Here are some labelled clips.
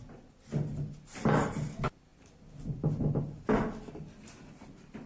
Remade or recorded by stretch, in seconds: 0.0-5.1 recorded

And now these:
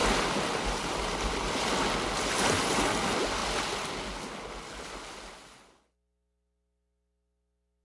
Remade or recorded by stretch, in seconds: 0.0-7.8 recorded

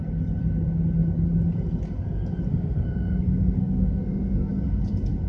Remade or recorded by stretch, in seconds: 0.0-2.5 recorded; 2.5-4.5 remade; 4.5-5.3 recorded

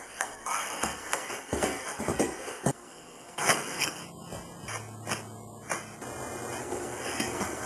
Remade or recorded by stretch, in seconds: 0.0-4.0 remade; 4.0-6.6 recorded; 6.6-7.7 remade

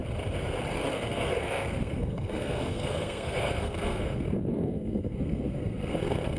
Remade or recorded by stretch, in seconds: 0.0-0.7 recorded; 0.7-6.4 remade

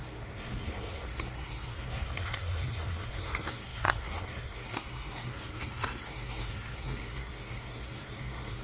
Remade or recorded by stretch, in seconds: 0.0-8.6 remade

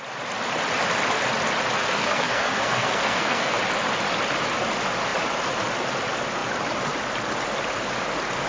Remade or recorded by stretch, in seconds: 0.0-1.8 recorded; 1.8-3.6 remade; 3.6-8.5 recorded